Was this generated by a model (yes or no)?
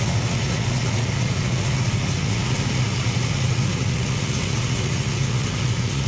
yes